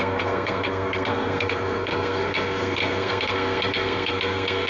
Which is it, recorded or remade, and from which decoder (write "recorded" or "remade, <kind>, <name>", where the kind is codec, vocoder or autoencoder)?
remade, codec, SNAC